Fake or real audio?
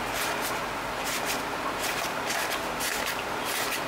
real